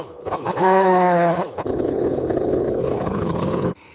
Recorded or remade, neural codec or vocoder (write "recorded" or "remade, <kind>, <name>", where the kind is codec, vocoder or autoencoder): remade, codec, HILCodec